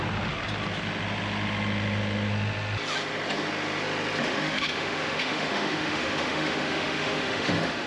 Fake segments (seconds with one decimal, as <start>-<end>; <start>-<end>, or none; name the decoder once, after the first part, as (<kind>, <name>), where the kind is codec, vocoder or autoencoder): 4.2-7.9 (autoencoder, DAC-VAE)